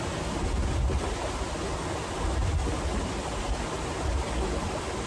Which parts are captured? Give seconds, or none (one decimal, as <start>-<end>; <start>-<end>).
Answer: 0.0-5.1